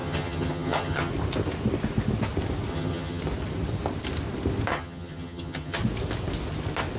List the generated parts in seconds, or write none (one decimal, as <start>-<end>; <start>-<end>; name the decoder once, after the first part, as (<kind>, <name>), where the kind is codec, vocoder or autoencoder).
0.0-1.1 (vocoder, HiFi-GAN); 2.7-3.2; 4.7-5.8